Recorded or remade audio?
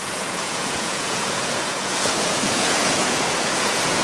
remade